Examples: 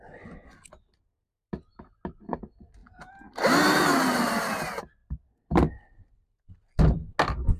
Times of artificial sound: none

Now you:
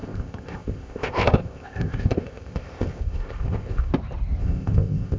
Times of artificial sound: 0.0-3.9 (codec, ZipCodec); 4.4-5.2

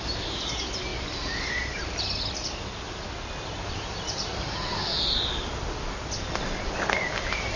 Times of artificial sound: none

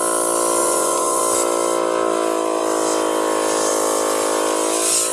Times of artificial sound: 0.6-1.2 (vocoder, Vocos)

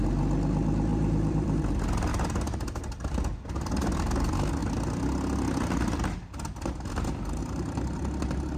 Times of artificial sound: 0.9-1.6 (vocoder, BigVGAN v2); 2.1-3.2

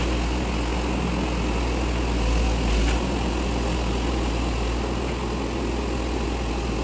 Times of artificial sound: none